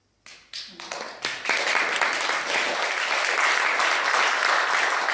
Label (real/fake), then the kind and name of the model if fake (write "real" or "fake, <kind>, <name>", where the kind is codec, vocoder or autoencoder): real